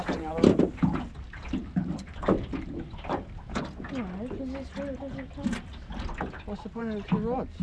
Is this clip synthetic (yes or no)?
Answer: no